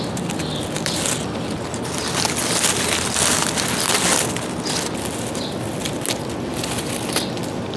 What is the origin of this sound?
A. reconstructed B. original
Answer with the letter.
B